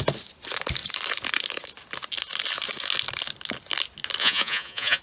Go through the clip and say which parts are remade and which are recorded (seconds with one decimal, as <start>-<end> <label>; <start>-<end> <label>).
0.0-4.2 recorded; 4.2-5.0 remade